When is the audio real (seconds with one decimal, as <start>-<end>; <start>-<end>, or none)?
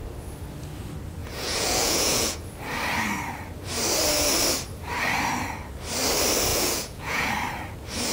0.0-1.2; 2.4-6.5; 7.3-8.1